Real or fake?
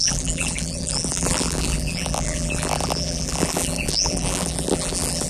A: fake